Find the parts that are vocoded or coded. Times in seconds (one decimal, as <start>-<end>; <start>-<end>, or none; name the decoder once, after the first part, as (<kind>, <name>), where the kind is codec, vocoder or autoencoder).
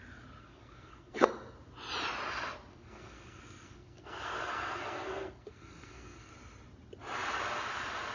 0.4-1.3 (codec, SNAC); 2.7-6.3